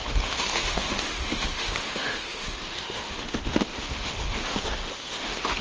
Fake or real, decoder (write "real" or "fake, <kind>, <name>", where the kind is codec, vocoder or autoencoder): fake, autoencoder, DAC-VAE